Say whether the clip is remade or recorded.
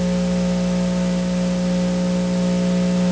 recorded